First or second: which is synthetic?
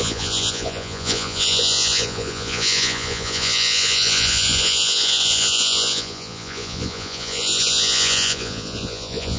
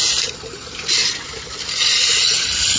first